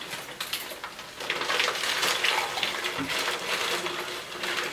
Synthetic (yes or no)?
no